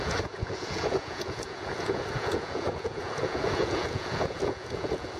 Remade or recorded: remade